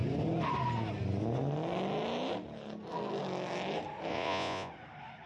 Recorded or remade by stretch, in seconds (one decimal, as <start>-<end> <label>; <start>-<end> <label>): 0.0-4.1 recorded; 4.1-4.7 remade; 4.7-5.3 recorded